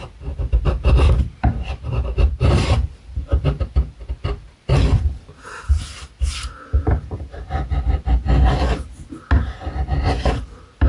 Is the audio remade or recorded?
recorded